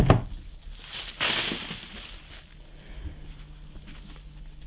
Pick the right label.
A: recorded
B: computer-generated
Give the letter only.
A